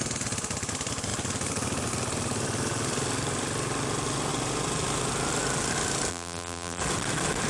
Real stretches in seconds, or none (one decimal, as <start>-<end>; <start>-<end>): 0.0-6.1; 6.8-7.5